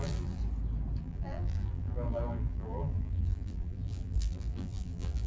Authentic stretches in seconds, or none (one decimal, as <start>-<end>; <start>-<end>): 0.4-1.0